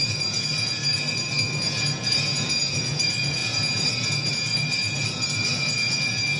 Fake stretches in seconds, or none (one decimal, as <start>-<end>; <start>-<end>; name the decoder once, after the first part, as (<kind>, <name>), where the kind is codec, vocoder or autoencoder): 0.0-0.8 (vocoder, Vocos); 1.3-6.4